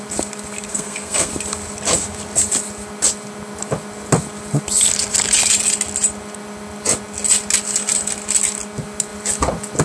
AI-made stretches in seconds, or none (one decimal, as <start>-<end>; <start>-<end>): 0.7-1.3